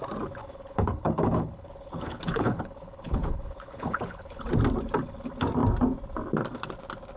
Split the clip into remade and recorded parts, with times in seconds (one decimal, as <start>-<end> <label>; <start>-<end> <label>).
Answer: 0.0-0.4 recorded; 0.4-4.4 remade; 4.4-7.2 recorded